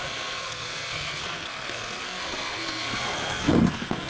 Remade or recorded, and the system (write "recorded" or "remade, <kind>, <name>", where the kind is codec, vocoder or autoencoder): remade, codec, SNAC